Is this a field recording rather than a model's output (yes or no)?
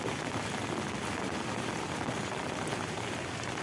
yes